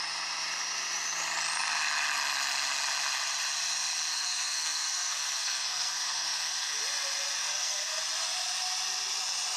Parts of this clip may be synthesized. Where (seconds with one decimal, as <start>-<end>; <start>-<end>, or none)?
4.1-6.8; 7.4-8.0